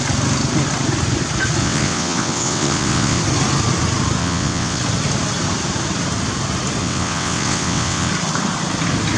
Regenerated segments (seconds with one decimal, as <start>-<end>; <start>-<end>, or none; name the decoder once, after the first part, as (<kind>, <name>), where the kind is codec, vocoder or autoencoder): 1.6-3.2 (vocoder, WaveNeXt); 4.2-4.8; 6.8-8.1